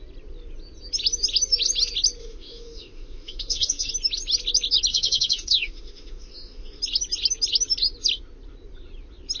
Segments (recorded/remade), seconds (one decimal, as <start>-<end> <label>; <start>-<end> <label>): 0.0-2.2 recorded; 2.2-3.9 remade; 3.9-4.9 recorded; 4.9-6.8 remade; 6.8-9.4 recorded